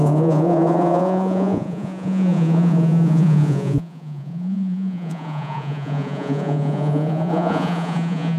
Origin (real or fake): fake